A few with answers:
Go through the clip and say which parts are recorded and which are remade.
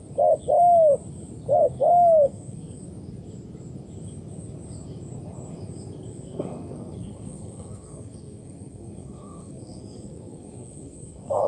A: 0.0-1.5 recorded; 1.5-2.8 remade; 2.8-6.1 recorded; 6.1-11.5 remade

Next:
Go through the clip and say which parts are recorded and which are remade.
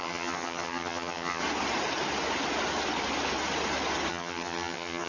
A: 0.0-1.4 remade; 1.4-4.1 recorded; 4.1-5.1 remade